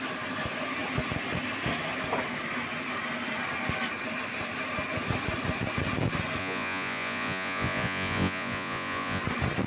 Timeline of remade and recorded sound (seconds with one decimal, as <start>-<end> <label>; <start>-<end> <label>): 0.0-6.4 recorded; 6.4-9.2 remade; 9.2-9.7 recorded

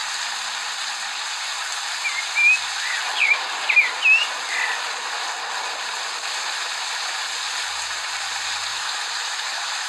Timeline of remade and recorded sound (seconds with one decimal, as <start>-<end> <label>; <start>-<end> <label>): 0.0-8.7 recorded; 8.7-9.9 remade

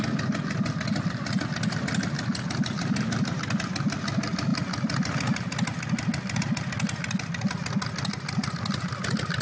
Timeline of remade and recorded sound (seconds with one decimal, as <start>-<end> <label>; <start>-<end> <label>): 0.0-9.4 recorded

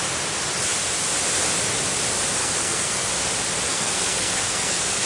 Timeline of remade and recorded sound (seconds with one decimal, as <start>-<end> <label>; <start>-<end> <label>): 0.0-2.4 recorded; 2.4-3.1 remade; 3.1-3.7 recorded; 3.7-5.1 remade

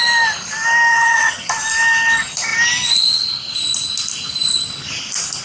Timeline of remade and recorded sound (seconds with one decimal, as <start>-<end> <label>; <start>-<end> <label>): 0.0-0.9 recorded; 0.9-1.5 remade; 1.5-5.4 recorded

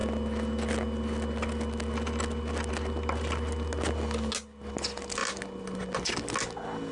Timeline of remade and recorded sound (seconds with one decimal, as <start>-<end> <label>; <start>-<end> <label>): 0.0-6.9 recorded

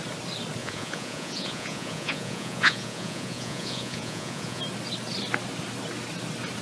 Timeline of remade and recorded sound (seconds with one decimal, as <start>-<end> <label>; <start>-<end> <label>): 0.0-0.6 recorded; 0.6-4.6 remade; 4.6-6.6 recorded